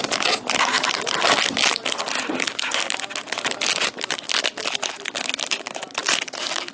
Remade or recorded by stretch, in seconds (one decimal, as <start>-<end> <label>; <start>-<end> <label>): 0.0-6.7 recorded